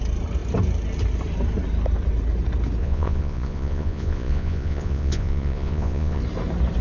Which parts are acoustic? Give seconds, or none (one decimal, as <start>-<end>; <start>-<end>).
0.0-2.8; 6.2-6.8